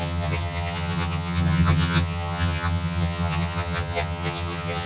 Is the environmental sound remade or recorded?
remade